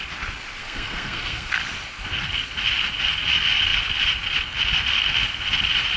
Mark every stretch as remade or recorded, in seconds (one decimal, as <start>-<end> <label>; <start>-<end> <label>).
0.0-0.6 recorded; 0.6-1.5 remade; 1.5-6.0 recorded